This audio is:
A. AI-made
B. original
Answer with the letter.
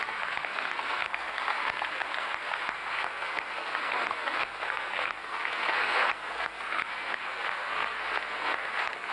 A